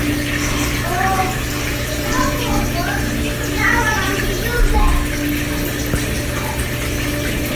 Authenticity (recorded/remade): recorded